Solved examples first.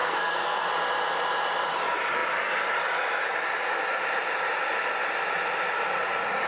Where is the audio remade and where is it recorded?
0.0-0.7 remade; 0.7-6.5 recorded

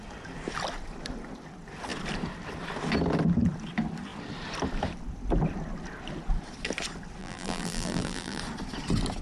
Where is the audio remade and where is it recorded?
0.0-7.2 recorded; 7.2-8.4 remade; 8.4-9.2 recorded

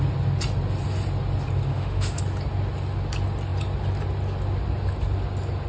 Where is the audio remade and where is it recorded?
0.0-1.7 recorded; 1.7-2.2 remade; 2.2-5.7 recorded

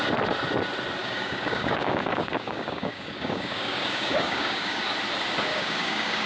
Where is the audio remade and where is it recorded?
0.0-1.0 recorded; 1.0-4.8 remade; 4.8-5.5 recorded; 5.5-6.3 remade

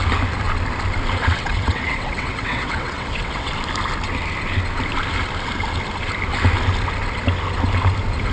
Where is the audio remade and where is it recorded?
0.0-1.2 recorded; 1.2-3.5 remade; 3.5-8.3 recorded

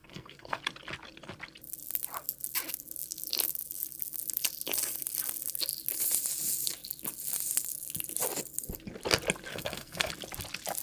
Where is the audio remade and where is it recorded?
0.0-0.6 remade; 0.6-9.5 recorded; 9.5-10.1 remade; 10.1-10.8 recorded